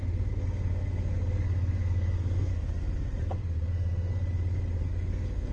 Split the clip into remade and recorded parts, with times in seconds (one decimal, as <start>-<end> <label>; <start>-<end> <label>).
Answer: 0.0-2.5 remade; 2.5-3.2 recorded; 3.2-4.2 remade; 4.2-4.8 recorded; 4.8-5.5 remade